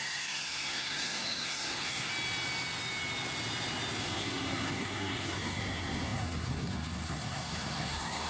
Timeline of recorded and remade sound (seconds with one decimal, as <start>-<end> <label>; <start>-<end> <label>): 0.0-2.1 remade; 2.1-4.0 recorded; 4.0-8.3 remade